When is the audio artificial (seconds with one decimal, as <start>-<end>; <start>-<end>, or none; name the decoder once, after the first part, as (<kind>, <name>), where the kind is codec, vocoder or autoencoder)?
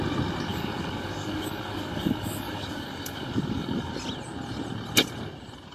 0.5-3.9 (codec, DAC)